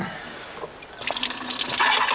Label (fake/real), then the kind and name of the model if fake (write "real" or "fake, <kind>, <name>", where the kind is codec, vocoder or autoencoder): real